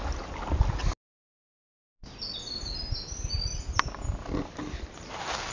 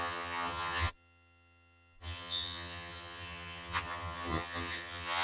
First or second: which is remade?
second